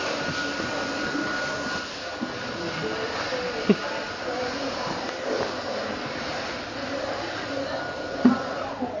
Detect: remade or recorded remade